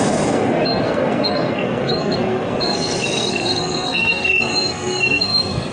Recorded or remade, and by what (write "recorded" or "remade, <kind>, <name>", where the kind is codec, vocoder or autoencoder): remade, codec, SNAC